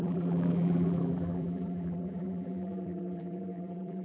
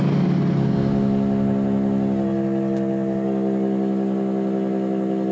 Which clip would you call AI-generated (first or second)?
first